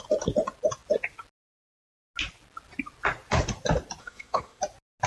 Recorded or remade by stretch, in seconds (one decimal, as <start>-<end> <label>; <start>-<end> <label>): 0.0-4.0 recorded; 4.0-4.6 remade; 4.6-5.1 recorded